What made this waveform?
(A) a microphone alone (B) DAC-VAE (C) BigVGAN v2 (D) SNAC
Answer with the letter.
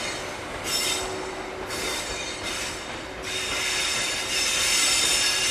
A